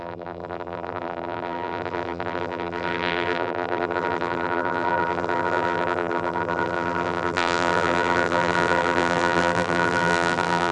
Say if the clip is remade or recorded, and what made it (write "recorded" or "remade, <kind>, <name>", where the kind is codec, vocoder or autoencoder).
remade, vocoder, BigVGAN v2